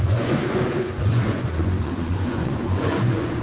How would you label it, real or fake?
fake